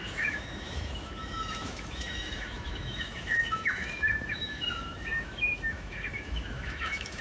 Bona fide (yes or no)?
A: no